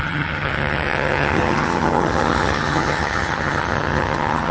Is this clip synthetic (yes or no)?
yes